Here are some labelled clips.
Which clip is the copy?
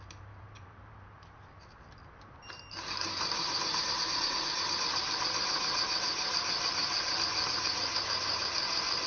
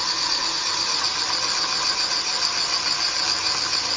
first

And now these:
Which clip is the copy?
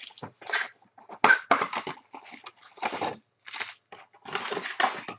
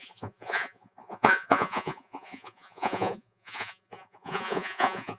second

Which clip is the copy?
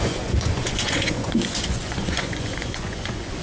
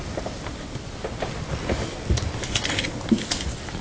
first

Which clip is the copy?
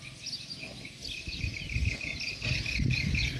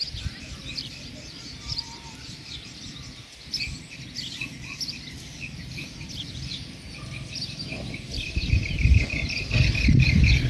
second